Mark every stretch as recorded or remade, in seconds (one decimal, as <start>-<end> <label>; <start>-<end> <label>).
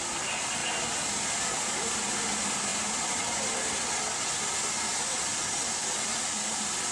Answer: 0.0-6.9 recorded